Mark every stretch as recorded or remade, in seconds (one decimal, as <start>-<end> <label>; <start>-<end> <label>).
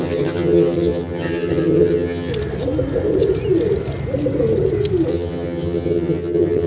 0.0-2.3 remade; 2.3-5.1 recorded; 5.1-6.7 remade